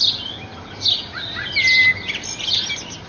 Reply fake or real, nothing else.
real